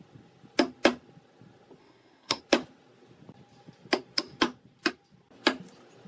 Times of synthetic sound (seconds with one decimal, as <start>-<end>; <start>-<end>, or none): 1.8-2.4